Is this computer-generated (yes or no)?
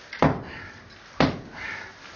no